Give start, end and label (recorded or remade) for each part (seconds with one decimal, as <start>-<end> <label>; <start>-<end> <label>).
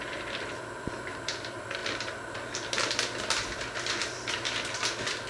0.0-5.3 recorded